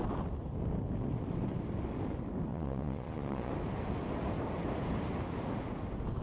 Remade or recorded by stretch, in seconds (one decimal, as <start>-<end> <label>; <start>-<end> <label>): 0.0-2.5 recorded; 2.5-3.5 remade; 3.5-6.2 recorded